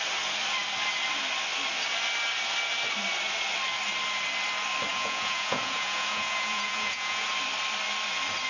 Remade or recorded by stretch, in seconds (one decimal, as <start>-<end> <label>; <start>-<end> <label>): 0.0-4.9 recorded; 4.9-7.3 remade; 7.3-8.5 recorded